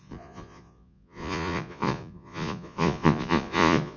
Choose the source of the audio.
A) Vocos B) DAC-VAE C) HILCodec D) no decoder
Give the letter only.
A